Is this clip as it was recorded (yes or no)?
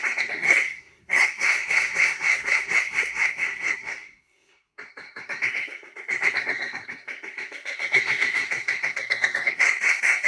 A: no